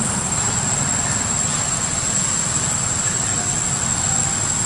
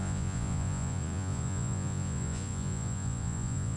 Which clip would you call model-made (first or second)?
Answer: second